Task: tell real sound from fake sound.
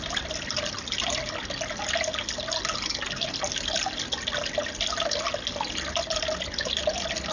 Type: real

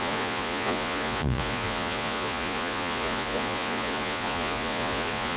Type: fake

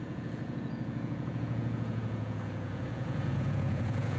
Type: fake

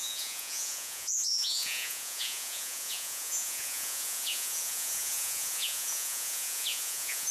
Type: fake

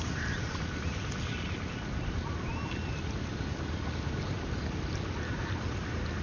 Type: real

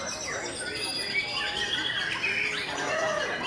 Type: real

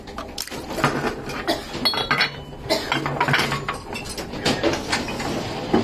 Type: real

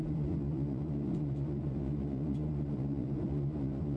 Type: fake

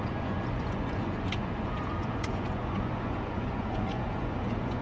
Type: fake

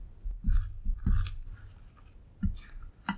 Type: real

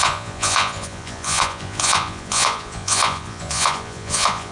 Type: fake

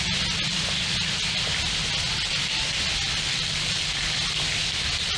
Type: real